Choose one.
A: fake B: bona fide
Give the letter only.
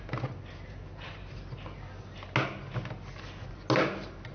B